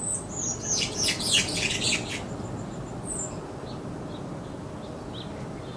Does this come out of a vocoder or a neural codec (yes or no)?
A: no